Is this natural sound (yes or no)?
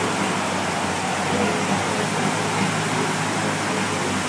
yes